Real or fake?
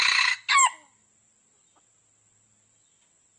real